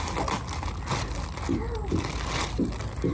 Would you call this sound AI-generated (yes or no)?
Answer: no